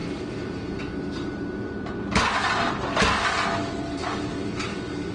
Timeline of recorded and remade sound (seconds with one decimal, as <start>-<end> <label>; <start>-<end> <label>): 0.0-5.1 recorded